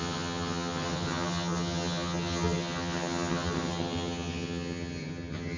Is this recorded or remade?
remade